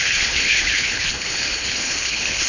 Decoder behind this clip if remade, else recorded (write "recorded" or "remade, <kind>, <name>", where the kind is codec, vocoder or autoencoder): remade, codec, HILCodec